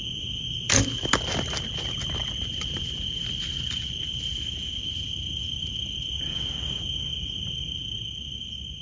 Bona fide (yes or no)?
yes